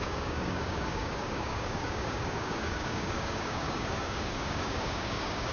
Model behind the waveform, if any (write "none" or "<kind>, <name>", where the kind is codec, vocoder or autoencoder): codec, DAC